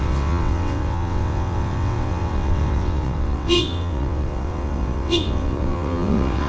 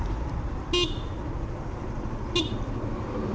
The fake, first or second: first